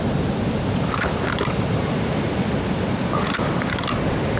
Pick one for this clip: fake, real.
real